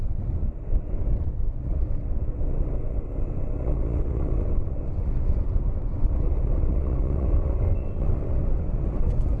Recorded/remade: remade